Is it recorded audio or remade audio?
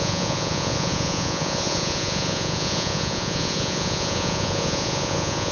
remade